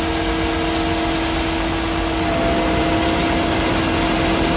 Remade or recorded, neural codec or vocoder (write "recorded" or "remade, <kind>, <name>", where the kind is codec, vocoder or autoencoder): recorded